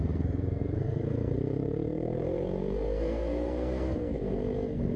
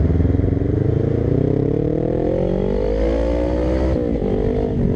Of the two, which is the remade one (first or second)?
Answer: first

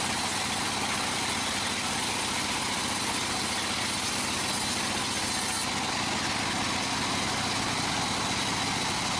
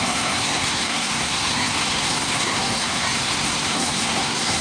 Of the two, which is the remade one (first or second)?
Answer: second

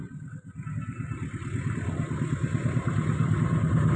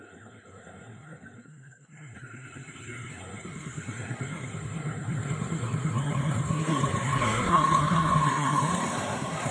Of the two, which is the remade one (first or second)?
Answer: second